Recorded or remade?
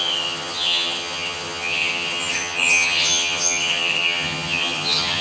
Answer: remade